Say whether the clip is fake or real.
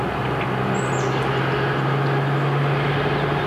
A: real